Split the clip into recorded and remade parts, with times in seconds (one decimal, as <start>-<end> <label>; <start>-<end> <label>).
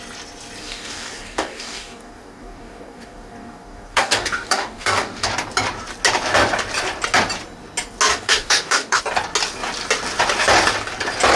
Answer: 0.0-0.6 recorded; 0.6-5.3 remade; 5.3-8.1 recorded; 8.1-9.0 remade; 9.0-11.4 recorded